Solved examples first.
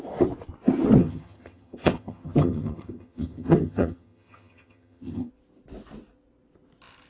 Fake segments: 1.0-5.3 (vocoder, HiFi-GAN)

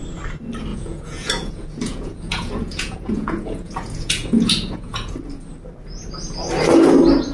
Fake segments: 0.7-5.1 (vocoder, Vocos)

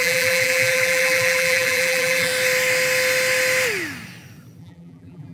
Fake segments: 0.0-2.3 (vocoder, BigVGAN v2); 4.6-5.3

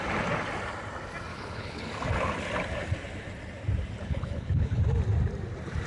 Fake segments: 1.3-1.9 (codec, HILCodec); 4.0-4.8

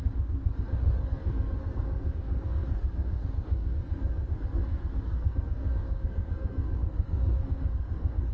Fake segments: 0.0-8.3 (codec, SNAC)

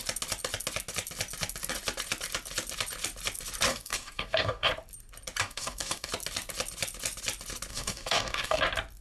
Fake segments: 3.7-4.7 (codec, DAC); 5.4-6.1; 7.7-8.6

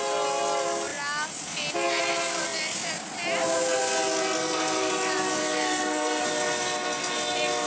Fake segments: 4.4-4.9 (codec, SNAC); 5.4-6.2